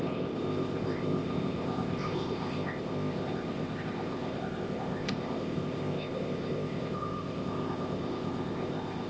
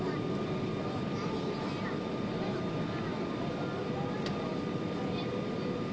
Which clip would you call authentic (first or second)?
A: second